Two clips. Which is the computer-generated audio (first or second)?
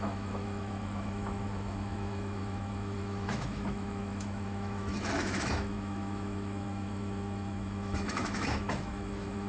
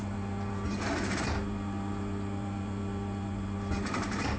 first